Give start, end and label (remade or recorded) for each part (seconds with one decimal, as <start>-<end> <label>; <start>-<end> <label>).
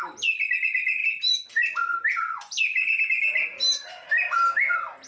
0.0-5.1 recorded